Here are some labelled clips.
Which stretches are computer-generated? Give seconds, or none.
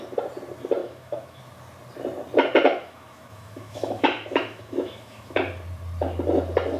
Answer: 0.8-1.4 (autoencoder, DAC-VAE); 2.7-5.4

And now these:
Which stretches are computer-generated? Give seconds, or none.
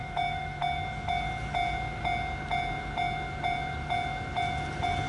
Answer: 0.0-0.6 (autoencoder, DAC-VAE)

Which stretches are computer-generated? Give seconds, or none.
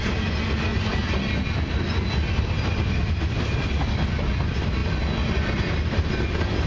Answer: none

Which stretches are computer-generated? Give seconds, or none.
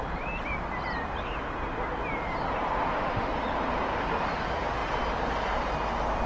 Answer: 2.8-3.3 (autoencoder, DAC-VAE)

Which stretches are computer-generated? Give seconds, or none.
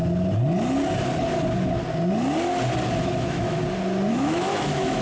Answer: 3.0-3.6 (autoencoder, DAC-VAE); 4.1-5.0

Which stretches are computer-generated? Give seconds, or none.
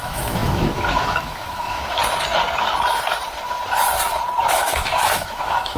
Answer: 0.0-2.0 (autoencoder, DAC-VAE); 4.5-5.8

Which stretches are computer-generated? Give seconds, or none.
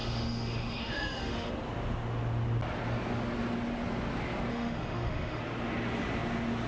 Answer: 0.0-1.5 (autoencoder, DAC-VAE); 4.5-5.4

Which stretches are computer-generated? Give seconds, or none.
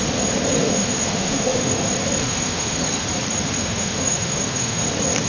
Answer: 0.6-1.8 (autoencoder, DAC-VAE); 2.2-2.8; 3.6-4.8